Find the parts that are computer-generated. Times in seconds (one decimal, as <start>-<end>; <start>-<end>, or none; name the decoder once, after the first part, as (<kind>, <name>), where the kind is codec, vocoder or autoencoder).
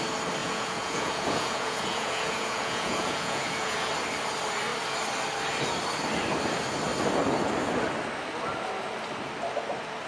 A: 0.4-3.9 (vocoder, Vocos)